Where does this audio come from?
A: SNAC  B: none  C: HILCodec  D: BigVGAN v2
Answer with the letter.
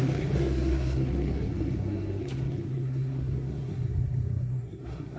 A